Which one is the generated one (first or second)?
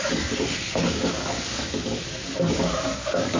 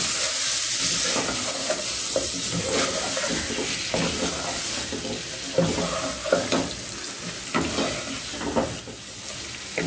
first